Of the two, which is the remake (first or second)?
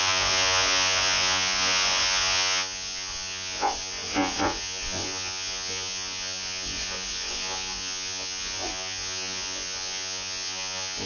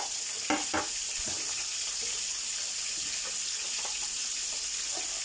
first